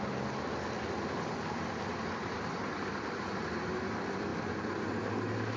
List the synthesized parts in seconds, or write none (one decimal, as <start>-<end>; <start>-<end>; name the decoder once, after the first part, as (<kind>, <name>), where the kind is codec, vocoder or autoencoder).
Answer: none